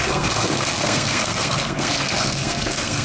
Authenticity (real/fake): fake